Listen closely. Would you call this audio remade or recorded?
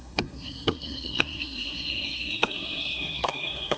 remade